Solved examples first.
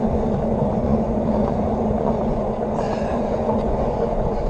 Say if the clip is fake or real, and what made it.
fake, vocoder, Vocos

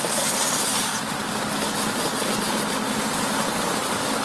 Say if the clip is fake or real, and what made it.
real